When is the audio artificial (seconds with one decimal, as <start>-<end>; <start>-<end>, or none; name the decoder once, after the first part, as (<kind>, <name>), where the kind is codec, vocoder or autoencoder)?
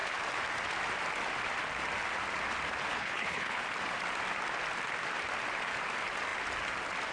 2.9-3.6 (codec, HILCodec)